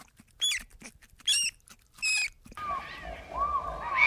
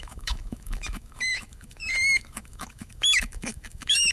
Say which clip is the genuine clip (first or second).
first